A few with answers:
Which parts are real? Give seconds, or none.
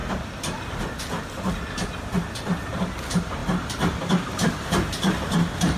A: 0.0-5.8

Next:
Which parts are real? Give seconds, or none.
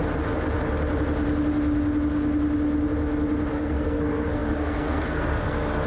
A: 0.0-3.5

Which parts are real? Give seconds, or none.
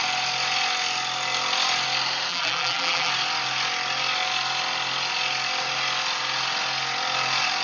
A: 0.0-2.3; 3.1-7.6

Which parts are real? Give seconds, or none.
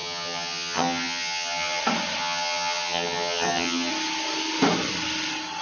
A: 1.8-2.2; 3.9-5.6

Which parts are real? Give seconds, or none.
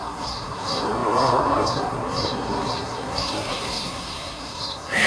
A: none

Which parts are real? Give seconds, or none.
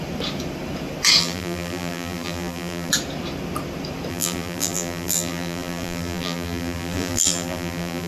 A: 0.0-1.2; 2.9-4.1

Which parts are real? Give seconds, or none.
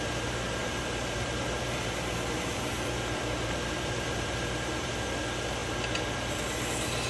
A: 0.0-0.6; 4.9-7.1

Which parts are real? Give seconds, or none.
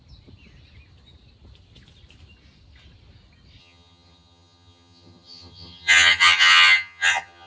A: 0.0-3.6